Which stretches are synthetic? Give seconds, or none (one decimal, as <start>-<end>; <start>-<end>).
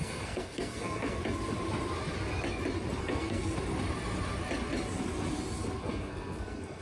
0.0-1.2; 3.0-3.4; 5.8-6.8